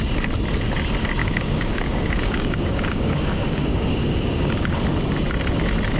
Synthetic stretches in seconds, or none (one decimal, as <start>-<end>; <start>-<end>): 1.2-4.8